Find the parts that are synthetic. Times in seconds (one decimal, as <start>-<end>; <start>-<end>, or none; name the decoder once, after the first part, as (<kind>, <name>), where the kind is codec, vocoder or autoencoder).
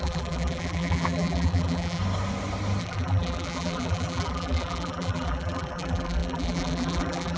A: 0.0-2.0 (vocoder, BigVGAN v2); 2.8-7.4